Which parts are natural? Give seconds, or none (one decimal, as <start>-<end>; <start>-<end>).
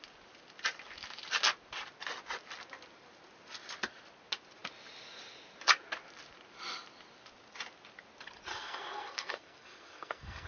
0.0-8.5